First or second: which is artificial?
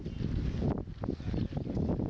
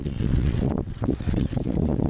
second